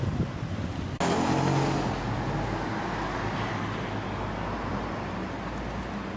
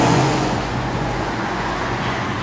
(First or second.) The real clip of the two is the first